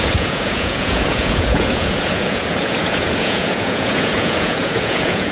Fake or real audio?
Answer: fake